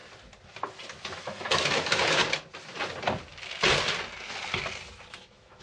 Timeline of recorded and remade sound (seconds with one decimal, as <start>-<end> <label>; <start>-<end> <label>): 0.0-1.1 recorded; 1.1-2.2 remade; 2.2-5.1 recorded; 5.1-5.6 remade